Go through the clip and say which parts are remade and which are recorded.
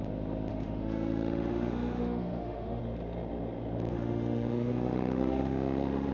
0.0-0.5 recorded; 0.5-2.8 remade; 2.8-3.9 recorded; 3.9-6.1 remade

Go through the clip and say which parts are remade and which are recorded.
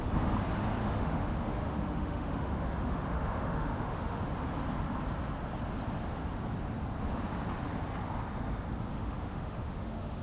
0.0-0.8 recorded; 0.8-4.2 remade; 4.2-8.9 recorded; 8.9-10.2 remade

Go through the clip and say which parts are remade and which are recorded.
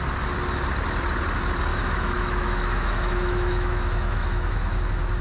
0.0-1.7 recorded; 1.7-4.8 remade; 4.8-5.2 recorded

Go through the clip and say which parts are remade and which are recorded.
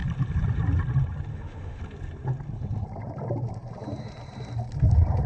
0.0-1.3 recorded; 1.3-1.8 remade; 1.8-5.3 recorded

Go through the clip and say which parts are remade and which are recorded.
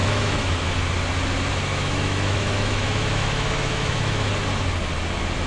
0.0-0.7 remade; 0.7-1.7 recorded; 1.7-4.3 remade; 4.3-5.5 recorded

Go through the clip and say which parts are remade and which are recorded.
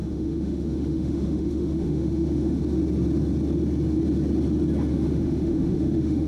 0.0-2.6 remade; 2.6-4.9 recorded; 4.9-6.3 remade